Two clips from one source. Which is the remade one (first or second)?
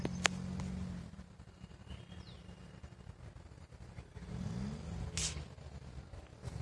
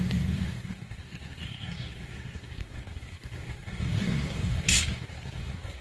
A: second